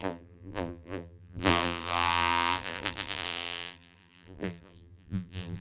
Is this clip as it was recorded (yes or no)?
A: no